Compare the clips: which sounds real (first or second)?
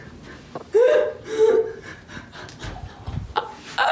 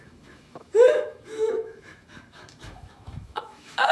first